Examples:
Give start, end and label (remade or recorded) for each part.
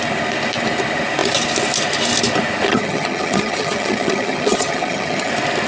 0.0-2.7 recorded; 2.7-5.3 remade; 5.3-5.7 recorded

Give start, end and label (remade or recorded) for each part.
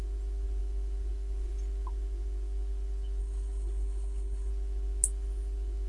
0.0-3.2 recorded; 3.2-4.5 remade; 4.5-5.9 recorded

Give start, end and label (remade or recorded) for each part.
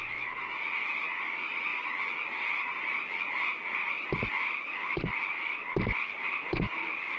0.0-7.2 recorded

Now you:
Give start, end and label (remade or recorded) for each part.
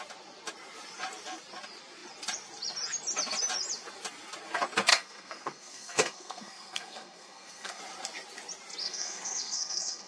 0.0-4.9 recorded; 4.9-7.8 remade; 7.8-8.8 recorded; 8.8-10.1 remade